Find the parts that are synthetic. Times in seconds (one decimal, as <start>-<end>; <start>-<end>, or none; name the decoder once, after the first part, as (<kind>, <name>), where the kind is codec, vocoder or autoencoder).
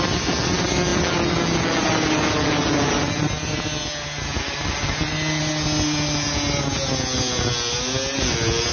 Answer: none